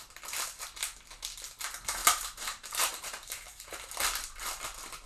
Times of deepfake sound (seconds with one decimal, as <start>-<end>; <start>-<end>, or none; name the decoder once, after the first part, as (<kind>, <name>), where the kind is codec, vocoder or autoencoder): 2.0-3.9 (vocoder, BigVGAN v2)